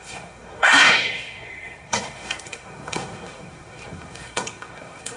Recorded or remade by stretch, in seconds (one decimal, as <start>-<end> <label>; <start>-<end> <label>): 0.0-5.2 remade